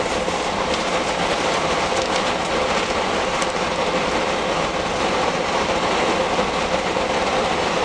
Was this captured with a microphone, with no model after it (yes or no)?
yes